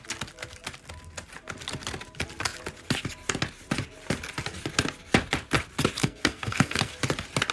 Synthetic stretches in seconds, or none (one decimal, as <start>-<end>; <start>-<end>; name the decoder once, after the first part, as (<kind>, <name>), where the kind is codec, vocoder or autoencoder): 6.0-6.9 (codec, SNAC)